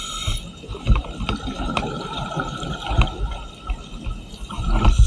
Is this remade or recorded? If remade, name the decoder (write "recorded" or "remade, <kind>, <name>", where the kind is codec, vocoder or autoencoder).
recorded